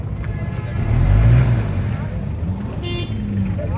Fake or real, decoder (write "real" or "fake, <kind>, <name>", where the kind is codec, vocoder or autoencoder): real